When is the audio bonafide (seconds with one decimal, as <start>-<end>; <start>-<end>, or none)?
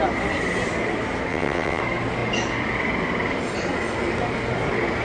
0.0-1.3; 1.8-5.0